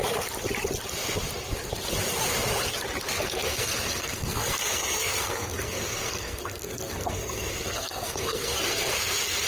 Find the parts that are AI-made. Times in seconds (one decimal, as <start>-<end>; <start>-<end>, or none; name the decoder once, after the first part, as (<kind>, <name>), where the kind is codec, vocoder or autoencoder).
3.2-9.5 (codec, SNAC)